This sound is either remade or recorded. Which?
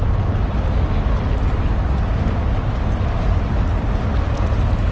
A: recorded